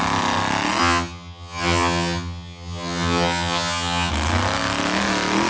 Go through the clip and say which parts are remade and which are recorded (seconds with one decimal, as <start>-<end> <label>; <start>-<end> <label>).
0.0-0.8 recorded; 0.8-4.1 remade; 4.1-5.5 recorded